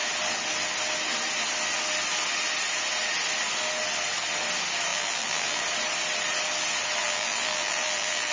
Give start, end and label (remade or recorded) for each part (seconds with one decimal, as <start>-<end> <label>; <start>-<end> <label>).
0.0-4.9 recorded; 4.9-5.6 remade; 5.6-7.0 recorded; 7.0-8.3 remade